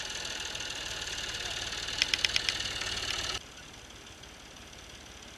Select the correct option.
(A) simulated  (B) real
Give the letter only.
B